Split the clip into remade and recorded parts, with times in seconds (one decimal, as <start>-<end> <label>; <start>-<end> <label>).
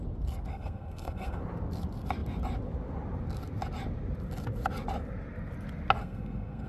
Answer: 0.0-0.5 recorded; 0.5-1.4 remade; 1.4-6.0 recorded; 6.0-6.7 remade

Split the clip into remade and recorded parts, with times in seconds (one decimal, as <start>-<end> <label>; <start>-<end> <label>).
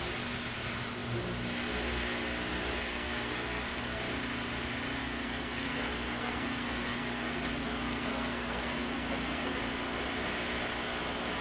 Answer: 0.0-2.9 recorded; 2.9-4.0 remade; 4.0-5.0 recorded; 5.0-9.6 remade; 9.6-11.4 recorded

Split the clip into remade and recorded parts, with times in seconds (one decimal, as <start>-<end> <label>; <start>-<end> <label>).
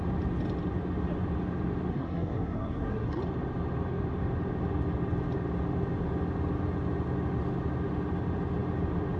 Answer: 0.0-1.9 recorded; 1.9-3.2 remade; 3.2-9.2 recorded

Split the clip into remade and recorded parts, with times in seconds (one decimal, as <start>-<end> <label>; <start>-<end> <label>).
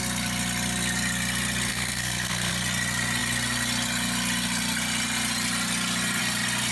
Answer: 0.0-1.7 recorded; 1.7-2.5 remade; 2.5-6.7 recorded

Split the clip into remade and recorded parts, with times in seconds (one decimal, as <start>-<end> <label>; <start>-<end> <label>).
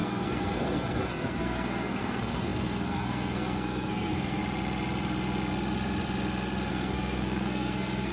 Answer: 0.0-4.4 remade; 4.4-6.7 recorded; 6.7-8.1 remade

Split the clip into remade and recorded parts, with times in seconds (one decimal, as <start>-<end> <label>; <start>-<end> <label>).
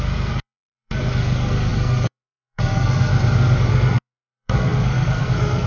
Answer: 0.0-3.1 remade; 3.1-3.7 recorded; 3.7-5.7 remade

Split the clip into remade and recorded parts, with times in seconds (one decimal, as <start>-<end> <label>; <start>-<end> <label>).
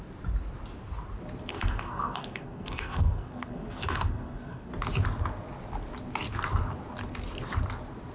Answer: 0.0-1.5 recorded; 1.5-4.7 remade; 4.7-8.1 recorded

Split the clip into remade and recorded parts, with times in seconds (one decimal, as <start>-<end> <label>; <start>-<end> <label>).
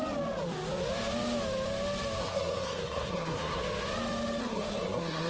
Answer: 0.0-2.2 recorded; 2.2-3.6 remade; 3.6-4.4 recorded; 4.4-5.3 remade